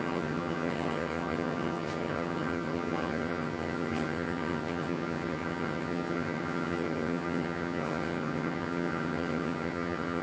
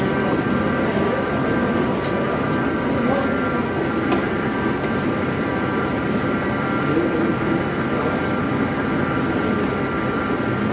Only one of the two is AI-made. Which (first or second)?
first